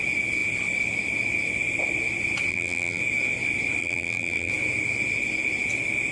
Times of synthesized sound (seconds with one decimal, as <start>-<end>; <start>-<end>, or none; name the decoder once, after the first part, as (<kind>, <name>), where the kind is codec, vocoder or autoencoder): 2.5-3.0 (vocoder, BigVGAN v2); 3.8-4.5